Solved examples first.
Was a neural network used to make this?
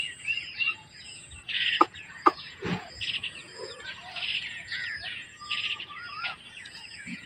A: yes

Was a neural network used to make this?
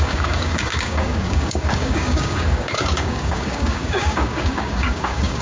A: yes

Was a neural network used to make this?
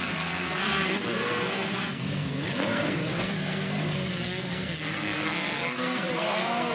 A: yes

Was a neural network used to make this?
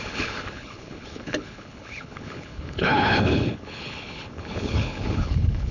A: yes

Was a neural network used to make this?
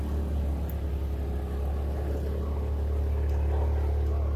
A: no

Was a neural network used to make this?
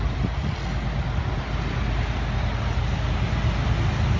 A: no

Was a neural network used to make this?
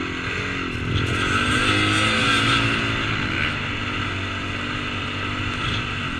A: no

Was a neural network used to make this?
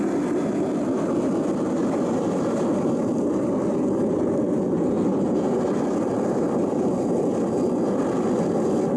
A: yes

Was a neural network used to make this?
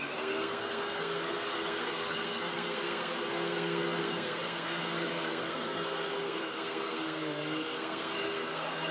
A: yes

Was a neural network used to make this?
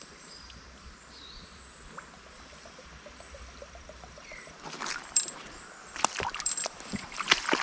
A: yes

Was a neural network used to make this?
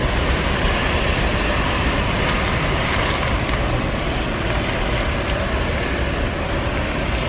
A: no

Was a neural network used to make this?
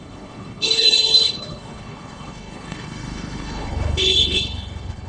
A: yes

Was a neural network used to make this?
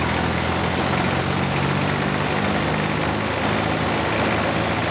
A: no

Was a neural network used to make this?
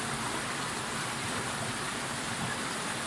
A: no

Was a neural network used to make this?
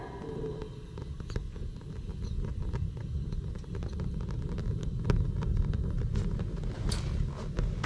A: no